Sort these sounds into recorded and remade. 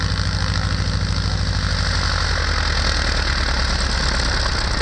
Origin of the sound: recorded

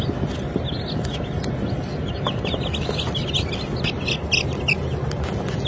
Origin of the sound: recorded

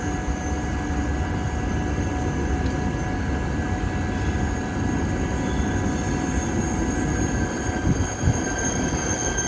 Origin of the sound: recorded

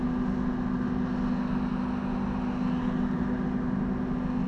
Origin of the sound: recorded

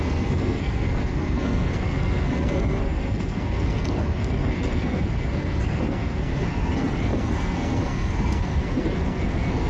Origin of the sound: remade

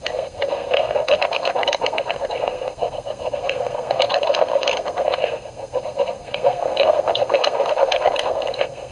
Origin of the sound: remade